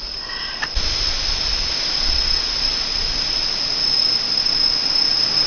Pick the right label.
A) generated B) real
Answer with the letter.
B